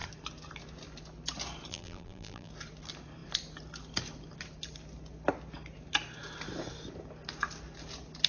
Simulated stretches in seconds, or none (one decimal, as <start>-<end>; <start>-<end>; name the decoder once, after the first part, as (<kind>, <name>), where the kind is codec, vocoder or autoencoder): 1.7-2.5 (vocoder, BigVGAN v2)